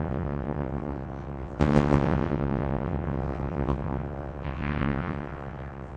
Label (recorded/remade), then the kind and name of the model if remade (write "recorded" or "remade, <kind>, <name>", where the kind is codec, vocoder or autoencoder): remade, vocoder, WaveNeXt